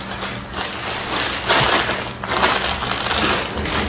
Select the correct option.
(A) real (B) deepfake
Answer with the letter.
A